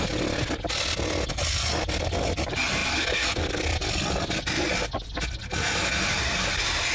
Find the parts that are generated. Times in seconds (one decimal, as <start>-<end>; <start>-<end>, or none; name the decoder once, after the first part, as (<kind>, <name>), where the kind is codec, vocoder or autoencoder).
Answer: none